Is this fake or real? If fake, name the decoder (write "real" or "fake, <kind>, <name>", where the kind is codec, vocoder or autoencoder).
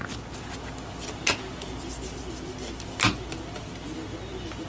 real